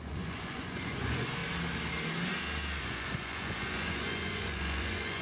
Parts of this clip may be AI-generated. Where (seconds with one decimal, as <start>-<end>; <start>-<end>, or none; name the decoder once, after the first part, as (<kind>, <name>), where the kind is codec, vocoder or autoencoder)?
0.0-1.4 (vocoder, Vocos); 2.8-5.2

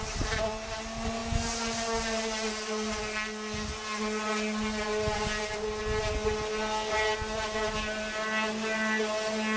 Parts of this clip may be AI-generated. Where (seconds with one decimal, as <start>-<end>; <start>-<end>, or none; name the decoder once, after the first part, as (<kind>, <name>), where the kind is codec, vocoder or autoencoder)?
none